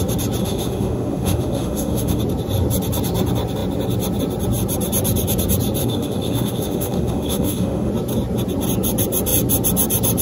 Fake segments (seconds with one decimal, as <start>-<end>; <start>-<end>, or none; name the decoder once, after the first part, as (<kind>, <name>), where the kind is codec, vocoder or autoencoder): 0.4-2.2 (autoencoder, DAC-VAE); 5.8-7.9